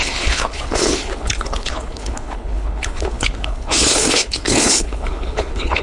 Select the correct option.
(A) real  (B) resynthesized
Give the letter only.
B